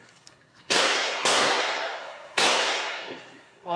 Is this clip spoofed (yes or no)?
yes